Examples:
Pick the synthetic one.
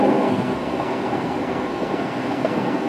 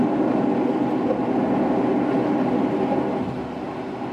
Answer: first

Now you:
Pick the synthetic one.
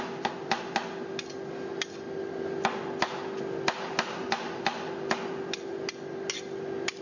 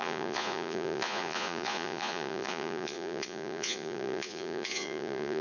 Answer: second